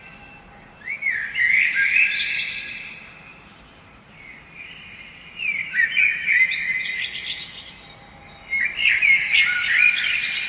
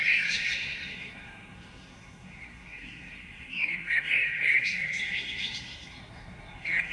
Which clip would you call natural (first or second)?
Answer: first